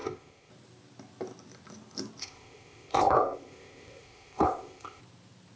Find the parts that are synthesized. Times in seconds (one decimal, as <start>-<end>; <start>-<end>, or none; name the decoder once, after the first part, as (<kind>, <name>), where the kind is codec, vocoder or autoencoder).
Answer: 0.0-0.5 (codec, ZipCodec); 2.2-5.0